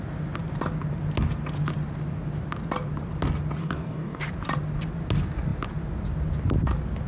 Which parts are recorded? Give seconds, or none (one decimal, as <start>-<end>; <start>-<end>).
0.0-3.6; 4.2-7.1